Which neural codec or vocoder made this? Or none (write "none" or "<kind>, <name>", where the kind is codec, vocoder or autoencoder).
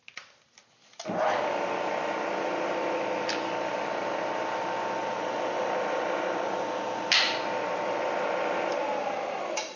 none